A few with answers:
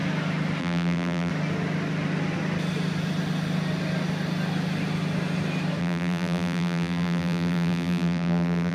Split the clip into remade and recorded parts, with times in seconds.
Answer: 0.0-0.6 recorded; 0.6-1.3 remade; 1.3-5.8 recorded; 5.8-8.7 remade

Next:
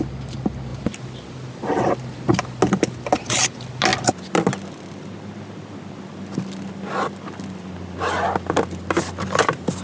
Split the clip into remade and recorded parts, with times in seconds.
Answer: 0.0-9.8 recorded